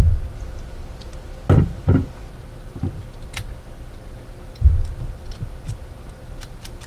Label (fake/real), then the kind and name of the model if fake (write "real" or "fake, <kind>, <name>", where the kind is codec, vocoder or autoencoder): real